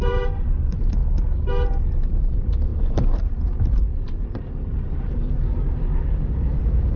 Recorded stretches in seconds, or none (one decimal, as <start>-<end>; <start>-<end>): 1.0-2.2